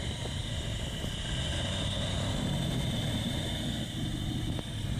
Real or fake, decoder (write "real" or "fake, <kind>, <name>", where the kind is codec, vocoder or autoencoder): real